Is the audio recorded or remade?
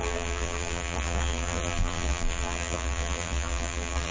remade